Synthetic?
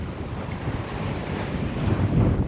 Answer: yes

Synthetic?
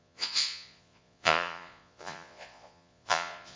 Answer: yes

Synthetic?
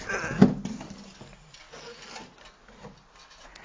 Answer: no